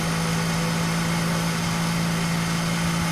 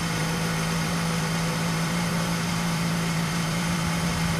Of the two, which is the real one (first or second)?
first